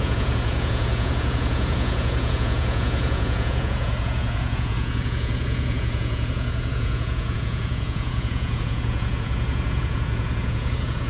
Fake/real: fake